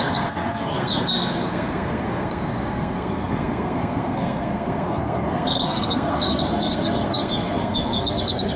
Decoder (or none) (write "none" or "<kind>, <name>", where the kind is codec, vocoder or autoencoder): codec, SNAC